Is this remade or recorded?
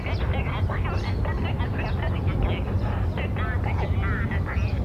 recorded